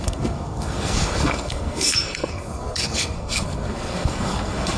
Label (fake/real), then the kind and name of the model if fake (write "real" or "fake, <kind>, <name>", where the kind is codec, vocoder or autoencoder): fake, codec, SNAC